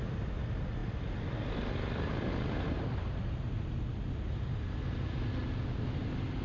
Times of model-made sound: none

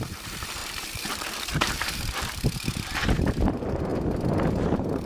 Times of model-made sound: 0.0-3.9; 4.5-5.1

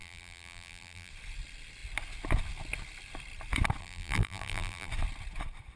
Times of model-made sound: 0.0-1.1; 3.8-4.9

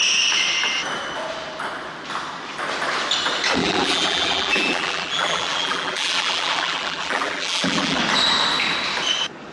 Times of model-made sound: 3.6-8.0

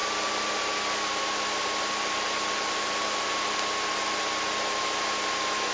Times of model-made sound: none

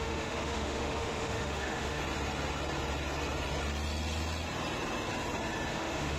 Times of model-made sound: 0.0-2.0; 5.7-6.2